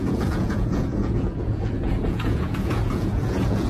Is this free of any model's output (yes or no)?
no